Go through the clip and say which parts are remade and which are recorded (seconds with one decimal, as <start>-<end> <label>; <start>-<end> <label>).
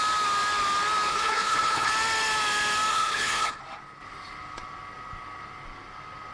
0.0-1.1 recorded; 1.1-1.9 remade; 1.9-2.9 recorded; 2.9-3.6 remade; 3.6-6.3 recorded